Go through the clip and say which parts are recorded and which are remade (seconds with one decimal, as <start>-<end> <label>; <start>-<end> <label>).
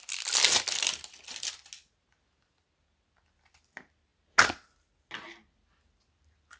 0.0-6.6 recorded